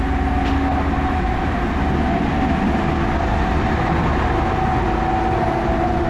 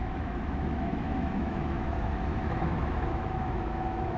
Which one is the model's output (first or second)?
second